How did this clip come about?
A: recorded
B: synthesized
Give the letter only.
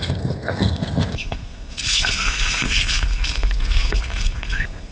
B